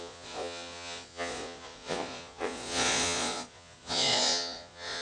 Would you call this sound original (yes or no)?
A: no